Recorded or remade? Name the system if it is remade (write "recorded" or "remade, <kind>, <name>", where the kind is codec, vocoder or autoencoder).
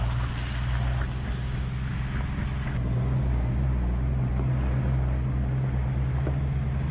recorded